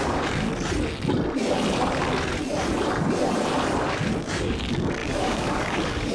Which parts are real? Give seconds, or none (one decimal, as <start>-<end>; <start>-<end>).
0.5-4.2